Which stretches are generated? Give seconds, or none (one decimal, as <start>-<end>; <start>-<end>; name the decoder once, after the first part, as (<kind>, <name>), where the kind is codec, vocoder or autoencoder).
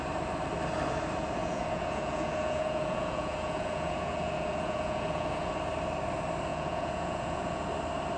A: 1.4-5.5 (vocoder, Vocos); 6.5-7.7